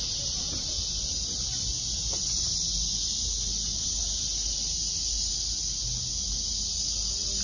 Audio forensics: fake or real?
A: real